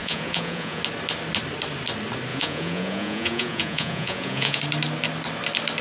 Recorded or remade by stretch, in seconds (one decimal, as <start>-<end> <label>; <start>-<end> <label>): 0.0-0.8 remade; 0.8-2.3 recorded; 2.3-4.6 remade; 4.6-5.8 recorded

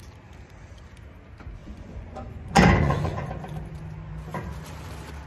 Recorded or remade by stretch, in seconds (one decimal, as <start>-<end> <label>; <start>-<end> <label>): 0.0-1.6 recorded; 1.6-3.3 remade; 3.3-5.3 recorded

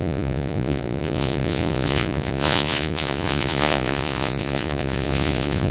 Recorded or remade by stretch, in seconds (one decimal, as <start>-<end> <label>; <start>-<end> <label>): 0.0-5.7 remade

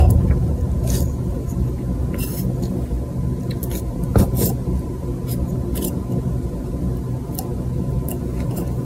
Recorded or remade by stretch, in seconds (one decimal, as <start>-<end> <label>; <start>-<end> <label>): 0.0-8.8 recorded

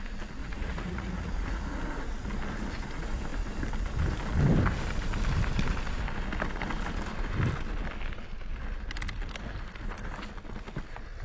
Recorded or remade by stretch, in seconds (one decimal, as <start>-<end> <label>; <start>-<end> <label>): 0.0-0.4 recorded; 0.4-1.8 remade; 1.8-11.2 recorded

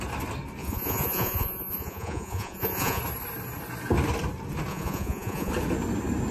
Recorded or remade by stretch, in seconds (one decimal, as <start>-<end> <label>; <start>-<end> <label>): 0.0-0.6 recorded; 0.6-3.0 remade; 3.0-4.7 recorded; 4.7-5.5 remade; 5.5-6.3 recorded